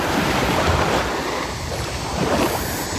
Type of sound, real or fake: fake